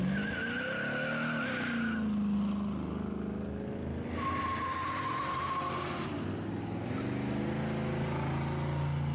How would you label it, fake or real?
real